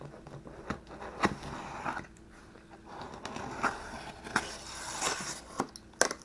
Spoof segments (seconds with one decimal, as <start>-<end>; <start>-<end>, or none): none